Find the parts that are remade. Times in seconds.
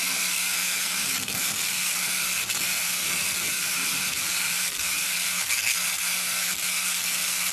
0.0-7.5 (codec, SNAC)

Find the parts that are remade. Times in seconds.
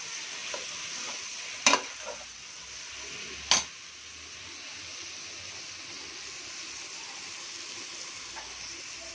none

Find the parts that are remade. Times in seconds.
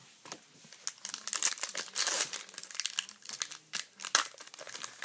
none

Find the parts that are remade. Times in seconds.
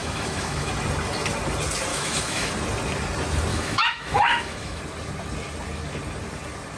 0.0-0.7 (autoencoder, DAC-VAE); 1.9-2.5; 3.5-4.8